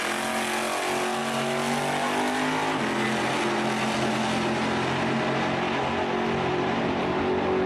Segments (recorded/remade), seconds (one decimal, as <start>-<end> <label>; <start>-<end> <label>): 0.0-6.5 recorded; 6.5-7.2 remade; 7.2-7.7 recorded